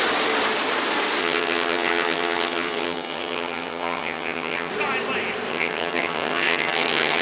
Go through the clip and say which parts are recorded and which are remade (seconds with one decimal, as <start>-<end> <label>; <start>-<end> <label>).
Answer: 0.0-1.2 recorded; 1.2-4.7 remade; 4.7-5.5 recorded; 5.5-7.2 remade

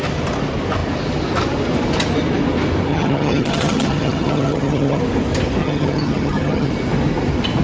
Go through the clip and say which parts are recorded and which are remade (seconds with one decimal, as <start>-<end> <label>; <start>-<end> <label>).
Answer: 0.0-2.9 recorded; 2.9-5.0 remade; 5.0-5.6 recorded; 5.6-6.7 remade; 6.7-7.6 recorded

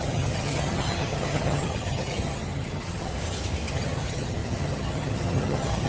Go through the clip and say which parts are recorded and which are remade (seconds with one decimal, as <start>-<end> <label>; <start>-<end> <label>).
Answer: 0.0-3.1 remade; 3.1-3.7 recorded; 3.7-5.9 remade

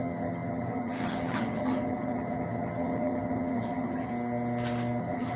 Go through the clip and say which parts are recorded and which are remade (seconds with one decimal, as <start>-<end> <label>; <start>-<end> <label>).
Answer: 0.0-4.1 remade; 4.1-5.0 recorded; 5.0-5.4 remade

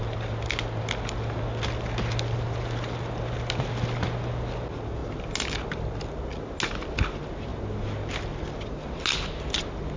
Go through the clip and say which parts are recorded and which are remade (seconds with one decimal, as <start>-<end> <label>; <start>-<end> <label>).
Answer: 0.0-10.0 recorded

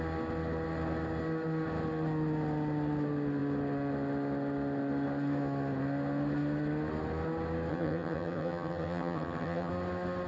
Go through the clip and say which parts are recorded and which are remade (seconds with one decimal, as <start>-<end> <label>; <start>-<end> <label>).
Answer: 0.0-7.7 recorded; 7.7-9.7 remade; 9.7-10.3 recorded